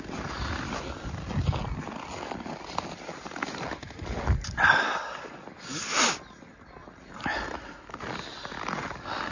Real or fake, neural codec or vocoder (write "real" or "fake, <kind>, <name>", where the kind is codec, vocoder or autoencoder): real